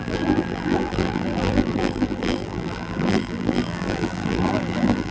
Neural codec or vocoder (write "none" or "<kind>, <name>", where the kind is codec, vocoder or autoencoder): vocoder, BigVGAN v2